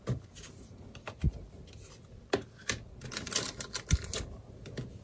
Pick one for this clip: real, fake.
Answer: real